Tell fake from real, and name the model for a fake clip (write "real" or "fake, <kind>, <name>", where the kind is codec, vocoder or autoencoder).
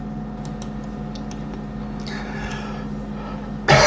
real